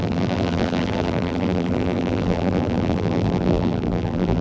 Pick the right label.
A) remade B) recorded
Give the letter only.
A